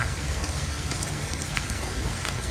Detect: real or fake fake